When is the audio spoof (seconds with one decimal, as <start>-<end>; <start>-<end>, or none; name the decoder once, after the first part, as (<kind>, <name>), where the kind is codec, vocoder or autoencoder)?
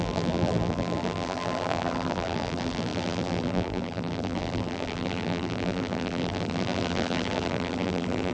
0.0-8.3 (vocoder, BigVGAN v2)